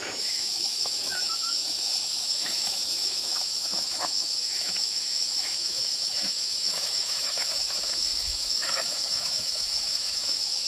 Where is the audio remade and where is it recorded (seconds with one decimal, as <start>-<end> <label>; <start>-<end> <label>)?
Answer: 0.0-10.7 remade